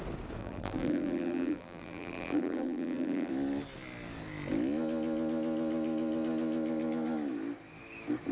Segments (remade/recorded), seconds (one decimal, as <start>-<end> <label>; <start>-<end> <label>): 0.0-0.4 recorded; 0.4-3.3 remade; 3.3-8.3 recorded